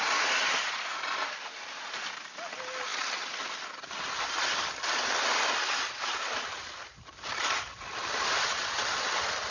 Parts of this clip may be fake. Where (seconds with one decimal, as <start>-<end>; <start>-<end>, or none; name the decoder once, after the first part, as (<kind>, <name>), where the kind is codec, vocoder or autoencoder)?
none